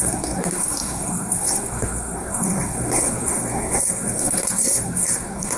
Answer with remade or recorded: remade